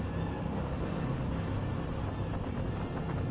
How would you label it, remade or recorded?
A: recorded